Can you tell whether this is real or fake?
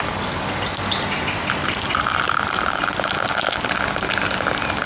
real